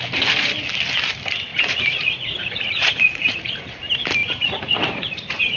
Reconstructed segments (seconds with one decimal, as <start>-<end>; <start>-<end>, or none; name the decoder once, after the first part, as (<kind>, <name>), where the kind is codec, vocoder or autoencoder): 1.5-3.5 (vocoder, Vocos); 4.2-5.6